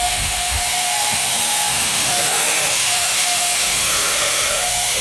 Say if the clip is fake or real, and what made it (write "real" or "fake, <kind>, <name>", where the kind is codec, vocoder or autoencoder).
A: fake, autoencoder, DAC-VAE